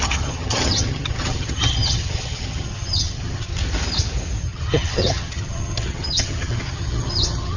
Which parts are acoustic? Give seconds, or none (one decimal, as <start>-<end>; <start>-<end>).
3.5-4.4